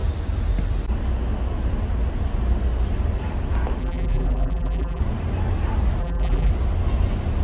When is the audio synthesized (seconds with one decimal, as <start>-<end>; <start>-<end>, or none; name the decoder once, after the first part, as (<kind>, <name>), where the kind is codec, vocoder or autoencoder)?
3.8-5.0 (vocoder, BigVGAN v2); 6.0-6.5